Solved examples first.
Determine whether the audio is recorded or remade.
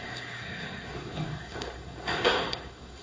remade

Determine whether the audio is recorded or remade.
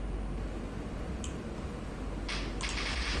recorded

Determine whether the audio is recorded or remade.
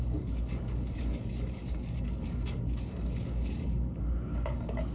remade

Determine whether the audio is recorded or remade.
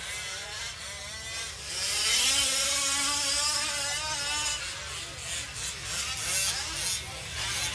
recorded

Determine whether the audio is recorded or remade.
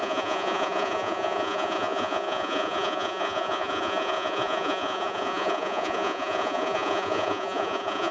remade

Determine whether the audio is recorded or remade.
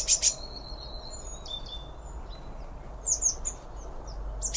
recorded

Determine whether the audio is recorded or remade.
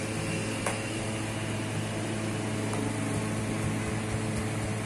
recorded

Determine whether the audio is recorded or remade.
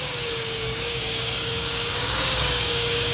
remade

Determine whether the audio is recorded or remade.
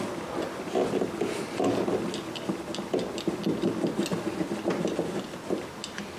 recorded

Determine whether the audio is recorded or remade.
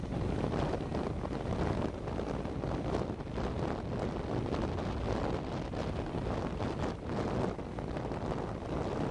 recorded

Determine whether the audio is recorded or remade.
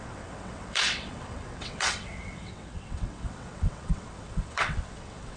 remade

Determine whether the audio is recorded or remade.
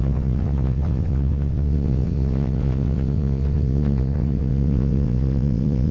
remade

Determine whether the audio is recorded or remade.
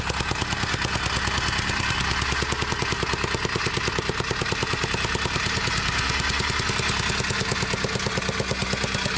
recorded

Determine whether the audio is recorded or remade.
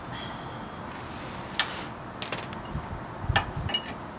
recorded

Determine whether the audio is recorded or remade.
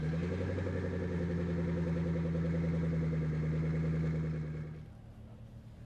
recorded